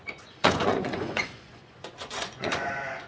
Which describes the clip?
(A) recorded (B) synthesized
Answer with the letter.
B